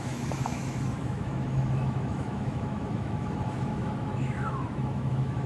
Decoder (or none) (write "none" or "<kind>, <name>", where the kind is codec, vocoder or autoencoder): autoencoder, DAC-VAE